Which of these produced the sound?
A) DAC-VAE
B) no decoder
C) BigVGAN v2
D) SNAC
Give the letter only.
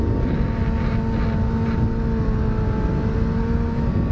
B